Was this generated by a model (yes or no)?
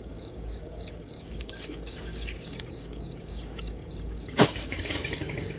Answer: yes